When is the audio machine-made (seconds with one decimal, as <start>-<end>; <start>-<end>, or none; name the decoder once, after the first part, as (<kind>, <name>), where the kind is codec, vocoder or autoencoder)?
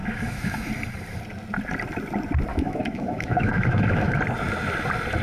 0.0-0.7 (autoencoder, DAC-VAE); 2.5-4.2